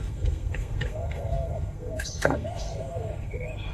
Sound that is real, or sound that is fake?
fake